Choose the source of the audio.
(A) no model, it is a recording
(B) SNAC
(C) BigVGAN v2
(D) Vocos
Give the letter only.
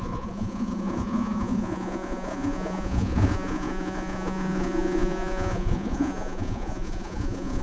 D